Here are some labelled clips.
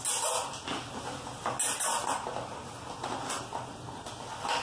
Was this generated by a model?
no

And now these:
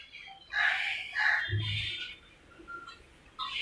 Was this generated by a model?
no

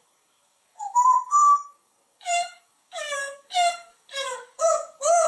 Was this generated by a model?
yes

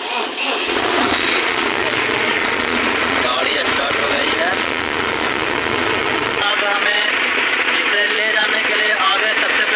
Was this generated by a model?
yes